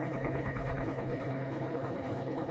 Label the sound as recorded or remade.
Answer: remade